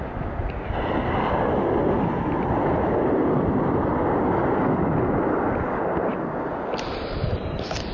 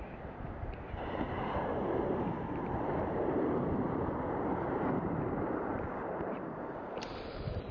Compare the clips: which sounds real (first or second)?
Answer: first